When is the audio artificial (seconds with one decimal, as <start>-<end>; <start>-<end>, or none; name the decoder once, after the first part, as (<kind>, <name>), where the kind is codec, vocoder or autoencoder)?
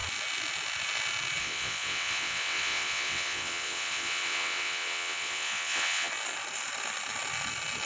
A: 1.4-6.1 (vocoder, WaveNeXt)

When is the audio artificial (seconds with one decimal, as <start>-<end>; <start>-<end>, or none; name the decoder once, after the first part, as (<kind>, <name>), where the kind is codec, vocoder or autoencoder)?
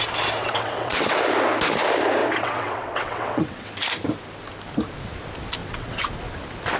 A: 0.4-1.1 (vocoder, WaveNeXt); 2.2-3.7; 5.6-6.1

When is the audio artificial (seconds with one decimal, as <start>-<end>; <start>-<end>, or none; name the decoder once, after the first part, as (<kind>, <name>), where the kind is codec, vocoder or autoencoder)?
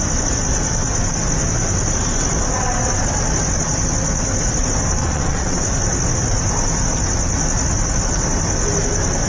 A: 5.0-5.6 (vocoder, WaveNeXt)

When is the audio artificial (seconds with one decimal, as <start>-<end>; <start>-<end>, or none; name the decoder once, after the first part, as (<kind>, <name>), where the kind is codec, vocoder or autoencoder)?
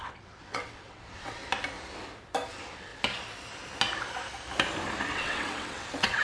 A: 0.0-1.4 (vocoder, WaveNeXt); 2.5-2.9; 5.1-6.2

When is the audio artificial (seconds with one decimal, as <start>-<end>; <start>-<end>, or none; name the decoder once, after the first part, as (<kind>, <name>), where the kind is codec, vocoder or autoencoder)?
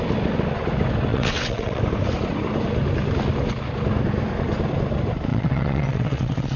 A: 1.1-1.8 (vocoder, WaveNeXt); 5.3-6.6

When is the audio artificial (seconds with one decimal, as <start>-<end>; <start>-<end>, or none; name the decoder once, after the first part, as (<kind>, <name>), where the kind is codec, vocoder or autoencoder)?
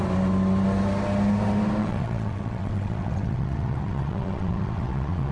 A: 1.8-5.3 (vocoder, WaveNeXt)